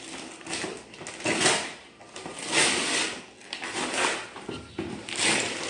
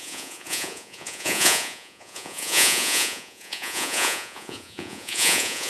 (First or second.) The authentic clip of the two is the first